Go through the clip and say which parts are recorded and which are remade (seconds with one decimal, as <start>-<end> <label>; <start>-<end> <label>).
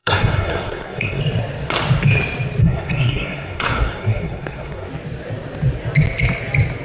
0.0-1.2 remade; 1.2-2.6 recorded; 2.6-4.9 remade; 4.9-6.8 recorded